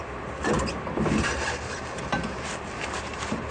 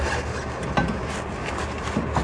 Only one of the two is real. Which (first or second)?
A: second